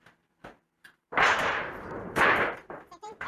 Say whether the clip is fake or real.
fake